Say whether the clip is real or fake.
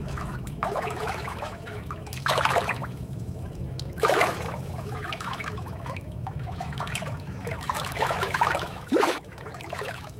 fake